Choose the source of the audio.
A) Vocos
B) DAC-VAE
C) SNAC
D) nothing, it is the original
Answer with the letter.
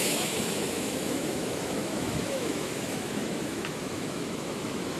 B